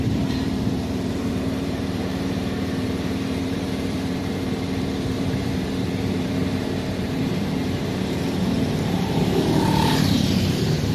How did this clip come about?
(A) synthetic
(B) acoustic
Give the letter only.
A